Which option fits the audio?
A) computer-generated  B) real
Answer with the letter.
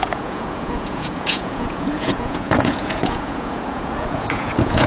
A